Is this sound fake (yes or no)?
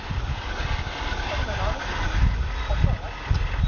no